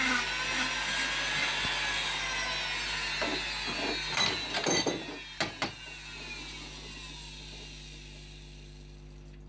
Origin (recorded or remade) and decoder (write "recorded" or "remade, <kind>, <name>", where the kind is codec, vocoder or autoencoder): recorded